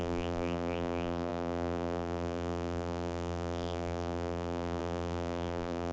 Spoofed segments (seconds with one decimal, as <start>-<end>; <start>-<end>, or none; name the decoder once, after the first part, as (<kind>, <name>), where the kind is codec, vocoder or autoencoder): 0.0-5.9 (vocoder, BigVGAN v2)